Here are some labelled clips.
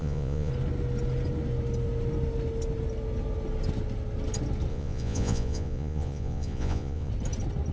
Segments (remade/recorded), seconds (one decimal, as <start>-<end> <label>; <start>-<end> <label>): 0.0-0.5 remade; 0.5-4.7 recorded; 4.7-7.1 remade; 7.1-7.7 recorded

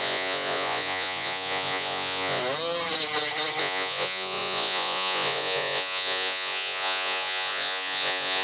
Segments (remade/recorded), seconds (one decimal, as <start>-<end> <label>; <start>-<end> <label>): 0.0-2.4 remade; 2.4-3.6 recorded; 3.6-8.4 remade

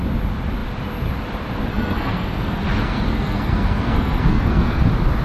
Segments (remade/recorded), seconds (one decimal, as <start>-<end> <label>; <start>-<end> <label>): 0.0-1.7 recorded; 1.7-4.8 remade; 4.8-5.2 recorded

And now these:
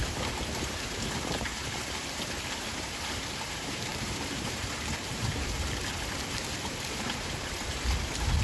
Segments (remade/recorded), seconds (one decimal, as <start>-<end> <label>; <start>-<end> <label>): 0.0-8.4 remade